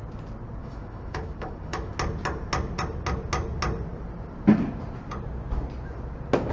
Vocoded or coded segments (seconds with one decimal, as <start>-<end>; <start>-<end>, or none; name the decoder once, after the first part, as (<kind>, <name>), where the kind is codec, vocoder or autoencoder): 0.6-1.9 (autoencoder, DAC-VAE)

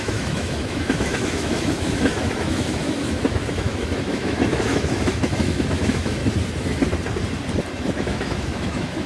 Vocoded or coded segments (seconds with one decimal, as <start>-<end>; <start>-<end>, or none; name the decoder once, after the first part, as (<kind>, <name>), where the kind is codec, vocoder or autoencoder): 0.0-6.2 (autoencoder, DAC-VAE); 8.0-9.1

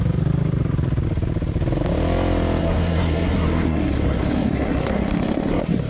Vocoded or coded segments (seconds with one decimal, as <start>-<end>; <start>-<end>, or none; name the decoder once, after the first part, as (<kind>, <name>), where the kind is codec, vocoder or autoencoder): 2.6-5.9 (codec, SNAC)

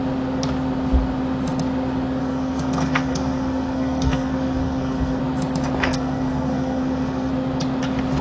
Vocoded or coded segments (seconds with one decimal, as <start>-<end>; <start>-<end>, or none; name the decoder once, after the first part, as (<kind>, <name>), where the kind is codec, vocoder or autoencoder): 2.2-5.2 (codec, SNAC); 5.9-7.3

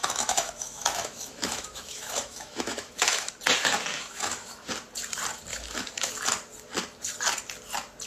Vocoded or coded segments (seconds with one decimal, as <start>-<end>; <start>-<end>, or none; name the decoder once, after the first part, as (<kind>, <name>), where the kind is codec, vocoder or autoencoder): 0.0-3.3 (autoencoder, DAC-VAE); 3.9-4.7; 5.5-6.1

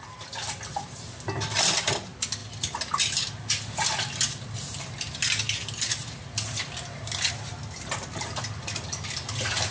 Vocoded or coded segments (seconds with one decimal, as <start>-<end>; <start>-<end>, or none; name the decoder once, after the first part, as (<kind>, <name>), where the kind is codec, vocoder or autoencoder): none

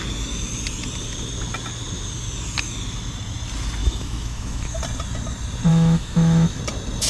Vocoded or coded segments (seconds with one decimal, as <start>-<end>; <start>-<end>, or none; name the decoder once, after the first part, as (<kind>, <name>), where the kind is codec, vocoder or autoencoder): 3.8-4.8 (autoencoder, DAC-VAE); 5.7-6.6

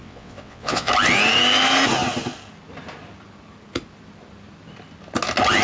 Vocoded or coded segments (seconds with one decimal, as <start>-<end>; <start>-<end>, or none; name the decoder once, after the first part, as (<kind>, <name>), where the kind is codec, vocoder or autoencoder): 0.0-0.9 (vocoder, WaveNeXt)